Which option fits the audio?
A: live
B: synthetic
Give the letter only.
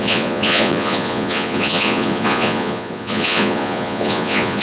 B